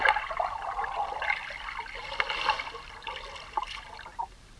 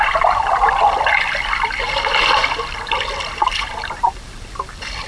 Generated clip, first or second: second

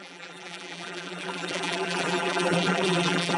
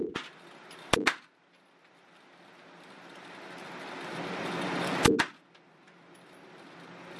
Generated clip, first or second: first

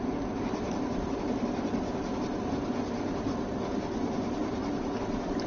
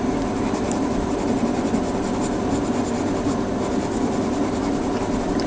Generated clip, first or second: first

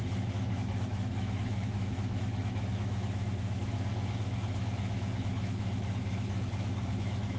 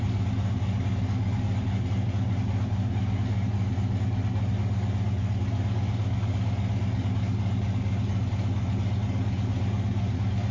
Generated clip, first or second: first